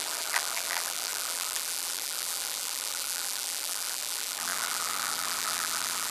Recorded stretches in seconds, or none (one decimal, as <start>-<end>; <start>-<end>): none